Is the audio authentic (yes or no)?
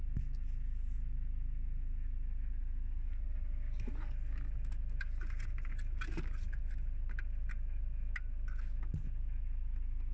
yes